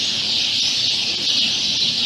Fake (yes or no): no